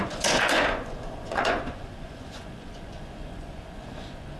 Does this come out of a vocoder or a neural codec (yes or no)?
yes